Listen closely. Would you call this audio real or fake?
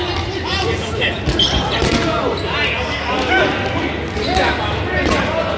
real